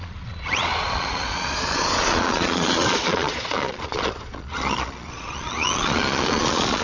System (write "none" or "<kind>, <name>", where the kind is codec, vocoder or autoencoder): vocoder, Vocos